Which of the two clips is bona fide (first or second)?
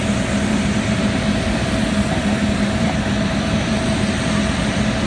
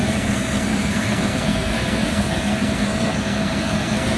first